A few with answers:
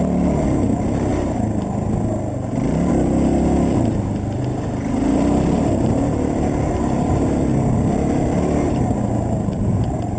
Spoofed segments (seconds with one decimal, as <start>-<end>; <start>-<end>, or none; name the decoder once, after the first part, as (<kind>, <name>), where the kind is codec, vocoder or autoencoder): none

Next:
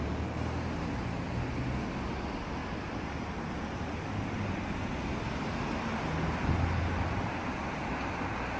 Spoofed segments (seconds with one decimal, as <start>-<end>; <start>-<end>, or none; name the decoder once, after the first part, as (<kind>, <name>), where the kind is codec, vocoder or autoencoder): none

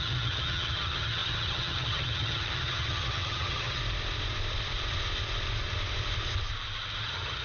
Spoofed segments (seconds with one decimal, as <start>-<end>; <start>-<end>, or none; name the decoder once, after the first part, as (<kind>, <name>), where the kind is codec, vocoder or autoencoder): 0.0-3.8 (vocoder, HiFi-GAN); 7.0-7.4

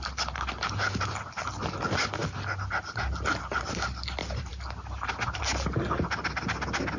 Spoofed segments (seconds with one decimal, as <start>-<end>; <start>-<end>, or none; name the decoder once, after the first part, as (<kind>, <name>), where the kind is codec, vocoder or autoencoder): none